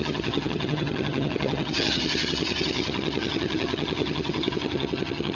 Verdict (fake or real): fake